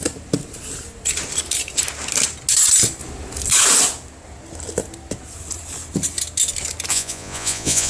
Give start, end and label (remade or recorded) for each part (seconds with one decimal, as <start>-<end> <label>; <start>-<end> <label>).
0.0-6.9 recorded; 6.9-7.9 remade